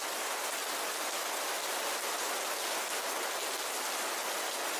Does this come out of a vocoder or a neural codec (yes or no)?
no